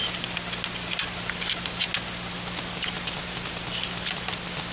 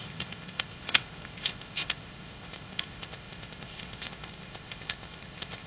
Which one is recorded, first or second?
first